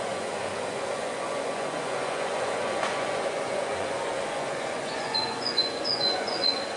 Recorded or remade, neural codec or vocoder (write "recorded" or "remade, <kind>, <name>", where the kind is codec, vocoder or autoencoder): remade, vocoder, Vocos